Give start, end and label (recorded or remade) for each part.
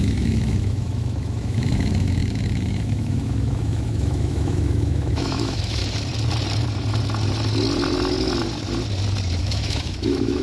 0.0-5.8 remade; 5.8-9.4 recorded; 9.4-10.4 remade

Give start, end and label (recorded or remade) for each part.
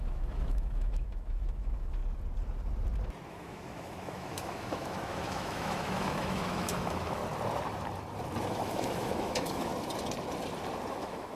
0.0-2.0 remade; 2.0-3.3 recorded; 3.3-7.2 remade; 7.2-8.5 recorded; 8.5-9.7 remade; 9.7-10.9 recorded; 10.9-11.4 remade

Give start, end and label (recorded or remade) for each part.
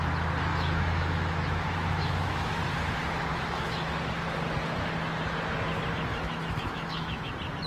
0.0-0.5 recorded; 0.5-2.6 remade; 2.6-3.3 recorded; 3.3-4.0 remade; 4.0-6.1 recorded; 6.1-7.3 remade; 7.3-7.7 recorded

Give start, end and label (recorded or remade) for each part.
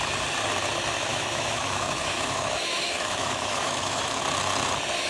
0.0-1.1 recorded; 1.1-4.2 remade; 4.2-5.1 recorded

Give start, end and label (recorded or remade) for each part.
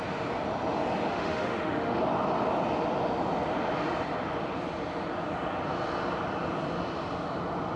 0.0-1.1 recorded; 1.1-2.0 remade; 2.0-7.8 recorded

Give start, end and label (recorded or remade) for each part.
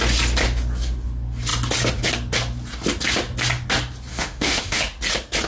0.0-4.1 recorded; 4.1-4.8 remade; 4.8-5.5 recorded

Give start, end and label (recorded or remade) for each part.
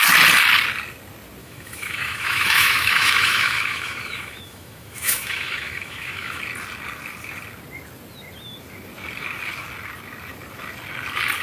0.0-1.4 recorded; 1.4-6.4 remade; 6.4-11.4 recorded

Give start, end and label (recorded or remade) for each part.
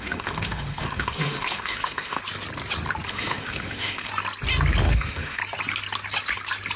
0.0-2.2 remade; 2.2-3.1 recorded; 3.1-4.1 remade; 4.1-4.8 recorded; 4.8-5.4 remade; 5.4-6.8 recorded